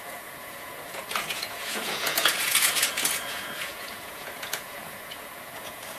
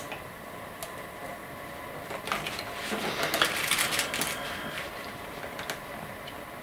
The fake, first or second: first